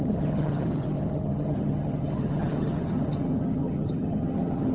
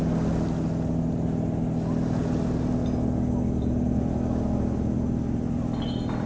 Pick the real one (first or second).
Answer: second